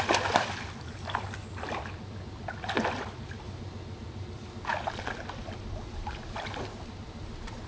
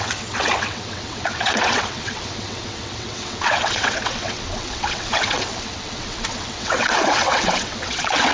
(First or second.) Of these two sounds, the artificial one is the second